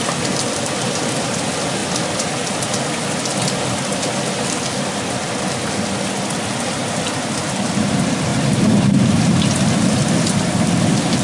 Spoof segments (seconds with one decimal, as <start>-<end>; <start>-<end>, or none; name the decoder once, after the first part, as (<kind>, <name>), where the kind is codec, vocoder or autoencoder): none